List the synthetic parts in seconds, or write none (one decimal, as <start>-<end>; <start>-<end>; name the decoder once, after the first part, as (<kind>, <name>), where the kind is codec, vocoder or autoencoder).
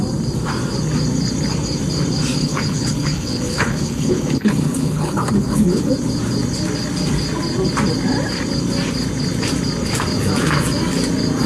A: 2.4-5.9 (codec, HILCodec)